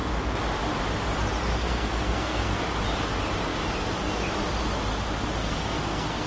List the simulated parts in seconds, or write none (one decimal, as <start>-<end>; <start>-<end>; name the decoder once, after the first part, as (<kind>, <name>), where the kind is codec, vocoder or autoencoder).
1.5-2.6 (codec, SNAC); 5.4-6.3